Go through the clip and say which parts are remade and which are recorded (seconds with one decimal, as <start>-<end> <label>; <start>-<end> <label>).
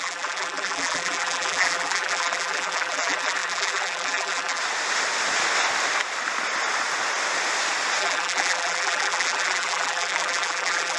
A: 0.0-4.6 remade; 4.6-8.0 recorded; 8.0-11.0 remade